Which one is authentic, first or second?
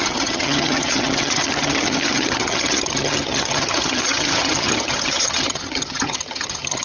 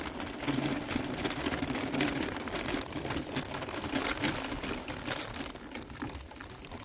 second